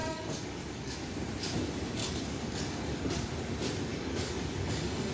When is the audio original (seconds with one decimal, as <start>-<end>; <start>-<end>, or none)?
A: 1.0-2.0; 3.2-3.9